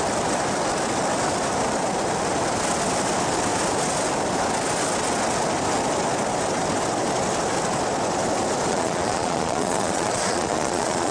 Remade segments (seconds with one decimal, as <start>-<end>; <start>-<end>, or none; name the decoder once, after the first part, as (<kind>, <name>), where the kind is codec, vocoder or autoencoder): 8.7-11.1 (vocoder, Vocos)